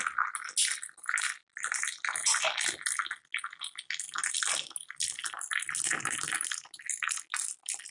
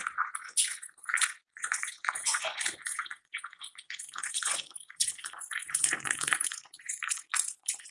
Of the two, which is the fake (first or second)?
second